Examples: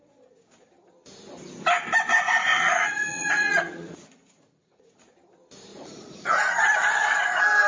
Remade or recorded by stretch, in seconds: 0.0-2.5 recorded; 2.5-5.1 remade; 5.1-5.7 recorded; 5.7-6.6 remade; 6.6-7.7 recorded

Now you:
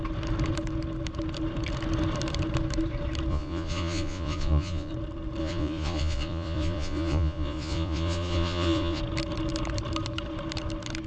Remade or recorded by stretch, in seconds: 0.0-3.3 recorded; 3.3-4.9 remade; 4.9-5.4 recorded; 5.4-9.0 remade; 9.0-11.1 recorded

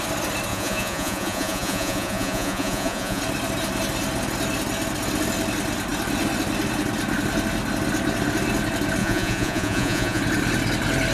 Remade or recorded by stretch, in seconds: 0.0-0.5 recorded; 0.5-3.2 remade; 3.2-9.0 recorded; 9.0-10.2 remade; 10.2-11.1 recorded

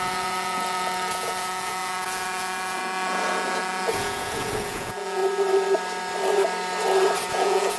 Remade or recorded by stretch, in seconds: 0.0-5.2 remade; 5.2-7.3 recorded; 7.3-7.8 remade

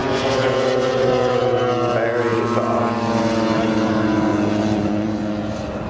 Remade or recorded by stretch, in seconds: 0.0-1.6 remade; 1.6-4.3 recorded; 4.3-5.9 remade

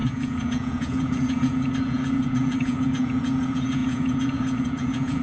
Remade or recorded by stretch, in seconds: 0.0-5.2 remade

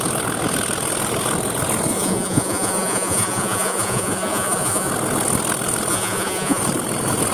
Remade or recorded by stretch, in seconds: 0.0-1.9 recorded; 1.9-4.9 remade; 4.9-5.9 recorded; 5.9-6.6 remade; 6.6-7.3 recorded